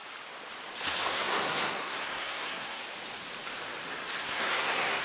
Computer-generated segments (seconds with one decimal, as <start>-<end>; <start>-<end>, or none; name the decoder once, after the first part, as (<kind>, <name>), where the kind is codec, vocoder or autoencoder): 1.1-2.8 (codec, SNAC); 4.2-5.0